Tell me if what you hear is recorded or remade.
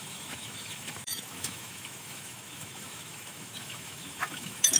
remade